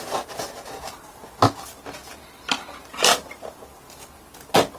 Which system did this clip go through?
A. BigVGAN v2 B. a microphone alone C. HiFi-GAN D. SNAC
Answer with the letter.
B